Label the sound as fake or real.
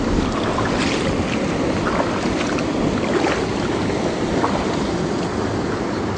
real